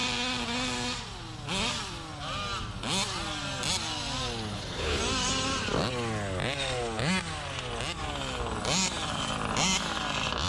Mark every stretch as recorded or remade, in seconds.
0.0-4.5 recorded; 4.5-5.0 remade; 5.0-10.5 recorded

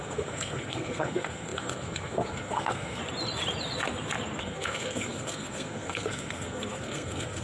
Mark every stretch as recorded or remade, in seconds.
0.0-3.0 remade; 3.0-4.4 recorded; 4.4-7.4 remade

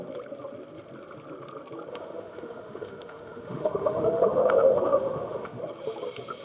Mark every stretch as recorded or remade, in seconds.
0.0-1.9 recorded; 1.9-5.6 remade; 5.6-6.4 recorded

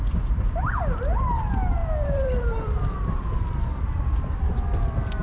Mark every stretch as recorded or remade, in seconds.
0.0-0.8 remade; 0.8-1.8 recorded; 1.8-5.2 remade

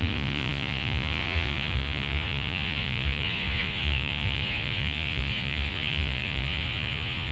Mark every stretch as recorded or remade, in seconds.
0.0-7.3 remade

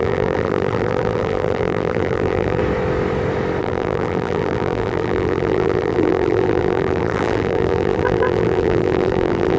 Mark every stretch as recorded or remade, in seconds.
0.0-2.6 remade; 2.6-3.6 recorded; 3.6-9.6 remade

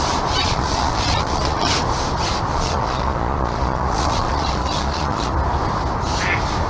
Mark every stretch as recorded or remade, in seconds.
0.0-0.4 recorded; 0.4-1.7 remade; 1.7-2.5 recorded; 2.5-5.3 remade; 5.3-6.7 recorded

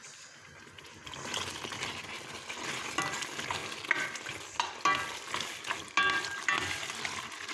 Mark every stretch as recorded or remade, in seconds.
0.0-7.5 recorded